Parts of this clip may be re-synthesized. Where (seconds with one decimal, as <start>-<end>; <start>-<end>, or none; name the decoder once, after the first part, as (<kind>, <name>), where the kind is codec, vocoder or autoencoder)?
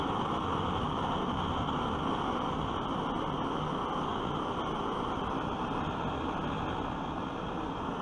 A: none